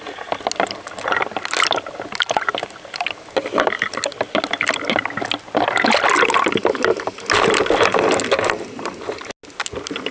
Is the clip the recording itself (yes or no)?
yes